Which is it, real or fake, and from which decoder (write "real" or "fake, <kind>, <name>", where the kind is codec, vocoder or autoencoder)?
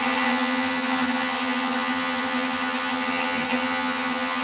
fake, vocoder, HiFi-GAN